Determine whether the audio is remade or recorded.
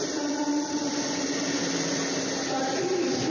remade